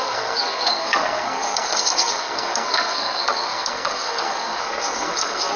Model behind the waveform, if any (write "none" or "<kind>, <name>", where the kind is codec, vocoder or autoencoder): codec, SNAC